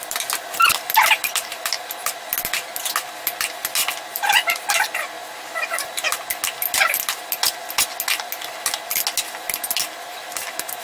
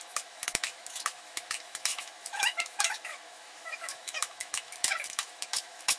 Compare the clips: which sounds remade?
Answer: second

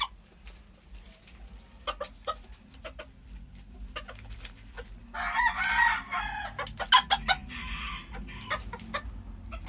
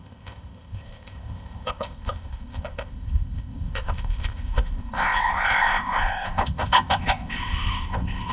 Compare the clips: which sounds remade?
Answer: second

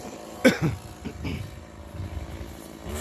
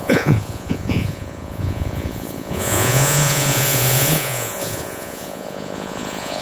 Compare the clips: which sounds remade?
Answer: second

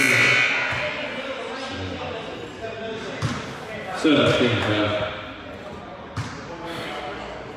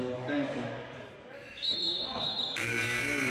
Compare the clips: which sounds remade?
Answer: second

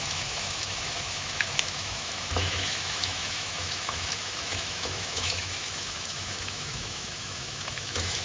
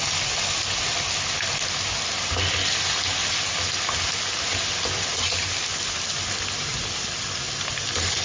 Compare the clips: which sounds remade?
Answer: first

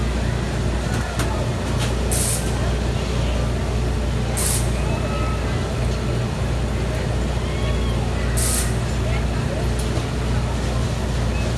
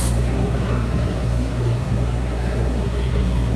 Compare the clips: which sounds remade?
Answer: second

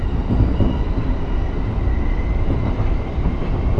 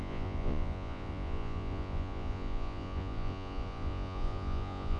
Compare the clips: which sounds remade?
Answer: second